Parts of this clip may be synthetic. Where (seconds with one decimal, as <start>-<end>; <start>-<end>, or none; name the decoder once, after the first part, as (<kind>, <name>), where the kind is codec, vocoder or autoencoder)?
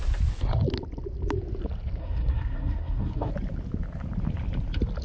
2.0-3.3 (codec, SNAC)